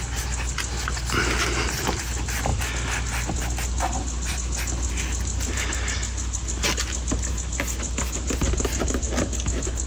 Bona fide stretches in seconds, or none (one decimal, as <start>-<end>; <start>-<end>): 0.0-9.9